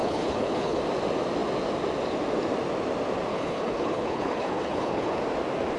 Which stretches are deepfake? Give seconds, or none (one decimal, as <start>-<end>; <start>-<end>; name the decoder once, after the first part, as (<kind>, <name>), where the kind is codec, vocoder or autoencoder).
0.0-0.8 (codec, HILCodec); 3.3-5.2